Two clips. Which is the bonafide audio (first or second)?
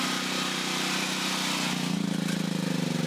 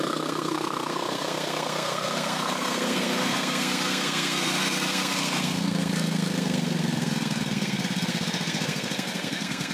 first